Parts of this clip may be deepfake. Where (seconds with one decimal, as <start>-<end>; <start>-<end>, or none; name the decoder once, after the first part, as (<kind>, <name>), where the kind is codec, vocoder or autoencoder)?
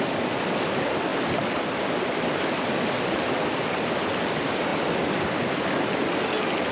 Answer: 4.7-5.7 (vocoder, BigVGAN v2)